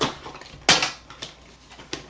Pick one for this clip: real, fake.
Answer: real